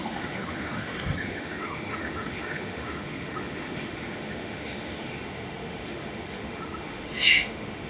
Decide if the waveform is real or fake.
fake